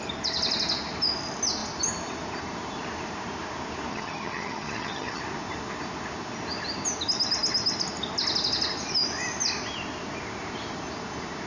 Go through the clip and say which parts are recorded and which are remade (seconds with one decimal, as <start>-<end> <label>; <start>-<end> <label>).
0.0-3.9 recorded; 3.9-5.2 remade; 5.2-11.5 recorded